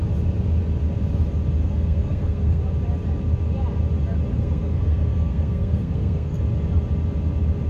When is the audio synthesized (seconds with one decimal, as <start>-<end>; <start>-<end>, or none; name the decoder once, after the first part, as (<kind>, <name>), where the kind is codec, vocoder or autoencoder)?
1.6-2.6 (codec, SNAC); 4.3-6.4